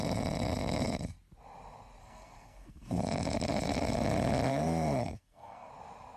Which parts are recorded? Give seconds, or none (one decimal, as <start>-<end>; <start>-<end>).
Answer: 0.0-2.0; 3.0-4.5; 5.7-6.2